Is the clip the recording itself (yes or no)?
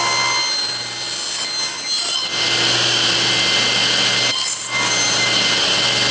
yes